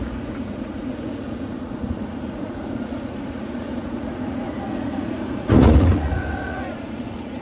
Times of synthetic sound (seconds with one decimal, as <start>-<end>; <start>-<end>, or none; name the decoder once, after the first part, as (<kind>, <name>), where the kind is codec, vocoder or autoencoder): 0.0-7.4 (vocoder, Vocos)